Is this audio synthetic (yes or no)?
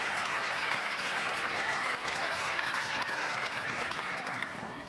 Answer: yes